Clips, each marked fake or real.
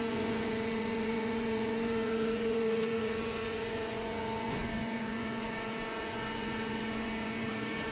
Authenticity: fake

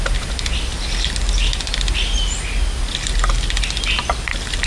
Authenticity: real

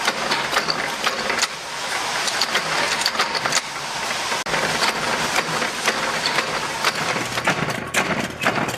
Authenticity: real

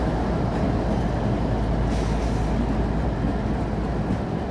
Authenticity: real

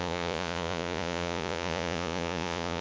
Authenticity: fake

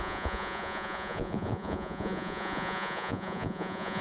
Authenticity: fake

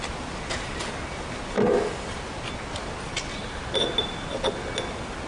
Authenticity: real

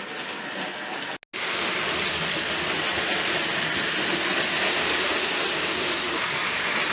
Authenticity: real